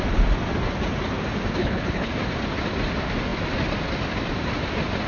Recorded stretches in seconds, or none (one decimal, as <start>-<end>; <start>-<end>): 0.0-1.6; 2.1-5.1